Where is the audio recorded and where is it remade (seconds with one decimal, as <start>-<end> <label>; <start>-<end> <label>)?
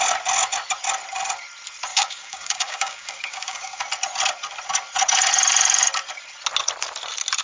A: 0.0-1.9 recorded; 1.9-3.8 remade; 3.8-7.4 recorded